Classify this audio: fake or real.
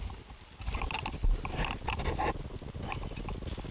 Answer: real